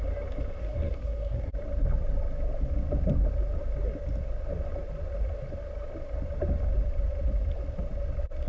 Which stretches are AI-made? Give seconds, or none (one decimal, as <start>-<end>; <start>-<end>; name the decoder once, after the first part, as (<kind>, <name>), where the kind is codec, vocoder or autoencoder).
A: 0.6-1.5 (codec, SNAC)